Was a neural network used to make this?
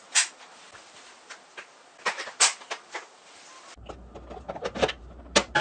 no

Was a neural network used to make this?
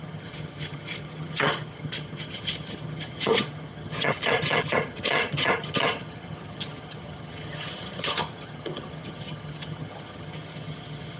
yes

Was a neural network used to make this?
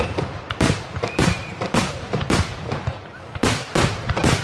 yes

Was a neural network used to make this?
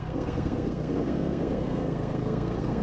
yes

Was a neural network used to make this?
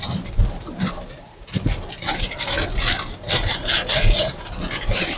yes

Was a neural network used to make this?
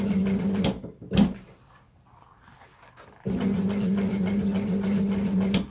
no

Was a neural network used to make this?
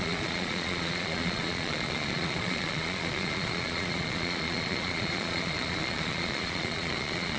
yes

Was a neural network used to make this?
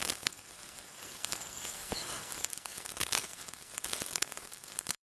yes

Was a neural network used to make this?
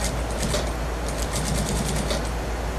no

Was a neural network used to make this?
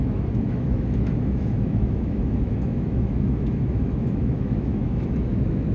yes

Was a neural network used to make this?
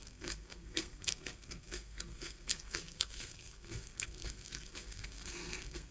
yes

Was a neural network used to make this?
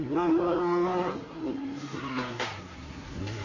yes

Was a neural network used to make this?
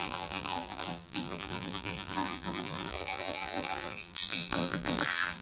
yes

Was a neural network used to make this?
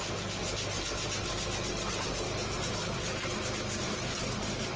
no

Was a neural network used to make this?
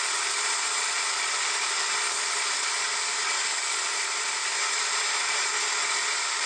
no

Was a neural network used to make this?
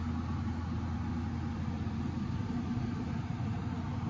no